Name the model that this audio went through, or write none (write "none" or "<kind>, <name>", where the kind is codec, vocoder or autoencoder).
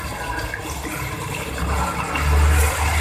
none